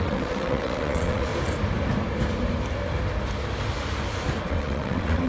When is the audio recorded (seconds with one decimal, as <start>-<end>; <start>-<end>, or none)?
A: 1.3-4.5